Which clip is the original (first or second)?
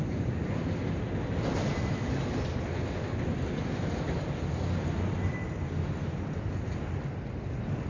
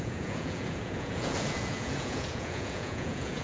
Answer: first